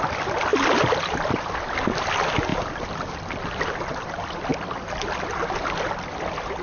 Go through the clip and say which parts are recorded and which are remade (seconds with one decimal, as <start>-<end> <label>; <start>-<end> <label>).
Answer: 0.0-6.6 recorded

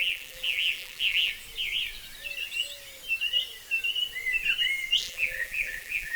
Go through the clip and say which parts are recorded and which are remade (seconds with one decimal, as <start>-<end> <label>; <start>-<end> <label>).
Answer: 0.0-1.3 remade; 1.3-5.0 recorded; 5.0-6.2 remade

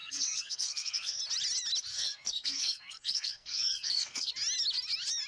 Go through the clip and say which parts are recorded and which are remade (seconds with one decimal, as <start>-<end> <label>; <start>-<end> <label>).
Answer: 0.0-1.2 remade; 1.2-1.9 recorded; 1.9-4.3 remade; 4.3-5.3 recorded

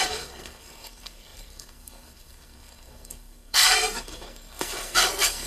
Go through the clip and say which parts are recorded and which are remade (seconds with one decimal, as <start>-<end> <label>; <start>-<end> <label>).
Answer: 0.0-5.5 remade